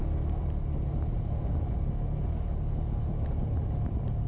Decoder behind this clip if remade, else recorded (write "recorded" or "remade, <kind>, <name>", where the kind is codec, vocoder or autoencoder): recorded